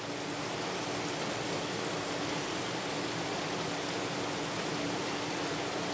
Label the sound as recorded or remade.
recorded